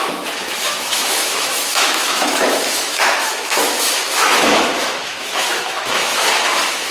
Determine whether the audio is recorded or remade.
remade